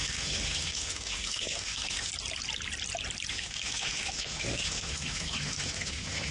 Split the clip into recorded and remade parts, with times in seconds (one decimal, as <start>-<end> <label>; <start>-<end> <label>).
0.0-2.1 remade; 2.1-3.3 recorded; 3.3-6.3 remade